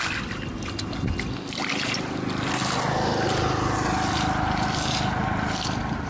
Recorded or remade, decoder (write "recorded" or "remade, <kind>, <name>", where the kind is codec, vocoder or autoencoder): recorded